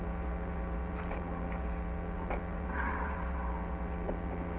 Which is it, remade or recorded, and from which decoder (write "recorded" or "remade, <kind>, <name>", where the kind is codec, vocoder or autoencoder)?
remade, vocoder, WaveNeXt